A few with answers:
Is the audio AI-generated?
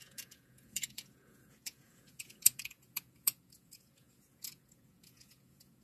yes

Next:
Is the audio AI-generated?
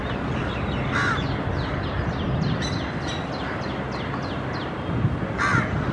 no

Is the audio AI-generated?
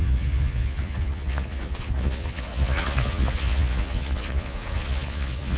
yes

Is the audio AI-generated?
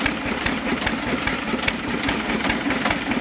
no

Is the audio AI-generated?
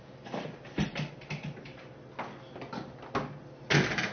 no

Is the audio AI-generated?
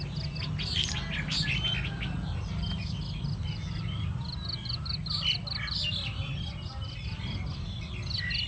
no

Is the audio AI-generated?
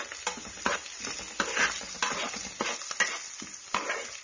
no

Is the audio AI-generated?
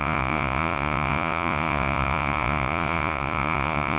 yes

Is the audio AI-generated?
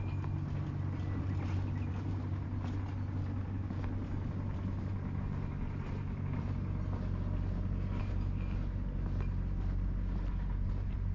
no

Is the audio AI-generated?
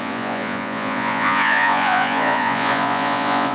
yes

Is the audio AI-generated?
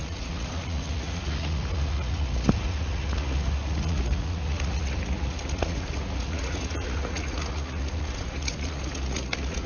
yes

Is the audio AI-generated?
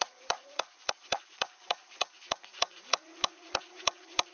yes